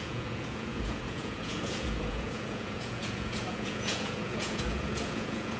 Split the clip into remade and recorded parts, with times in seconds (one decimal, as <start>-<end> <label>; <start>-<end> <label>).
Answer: 0.0-5.6 remade